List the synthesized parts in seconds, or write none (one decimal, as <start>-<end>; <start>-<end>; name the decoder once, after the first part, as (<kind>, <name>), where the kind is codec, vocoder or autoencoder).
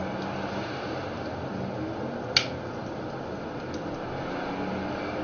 none